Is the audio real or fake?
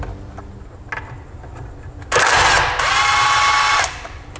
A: real